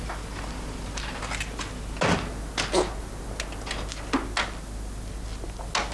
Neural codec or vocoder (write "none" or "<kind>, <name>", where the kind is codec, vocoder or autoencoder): none